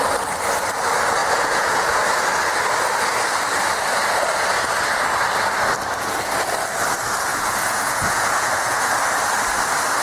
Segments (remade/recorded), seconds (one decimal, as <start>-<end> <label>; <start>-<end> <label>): 0.0-1.2 recorded; 1.2-2.0 remade; 2.0-7.3 recorded; 7.3-8.9 remade; 8.9-10.0 recorded